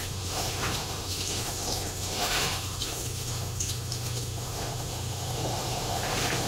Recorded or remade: remade